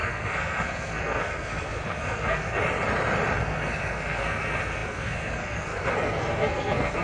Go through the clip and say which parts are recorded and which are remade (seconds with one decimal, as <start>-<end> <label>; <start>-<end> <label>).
0.0-2.6 remade; 2.6-3.4 recorded; 3.4-7.0 remade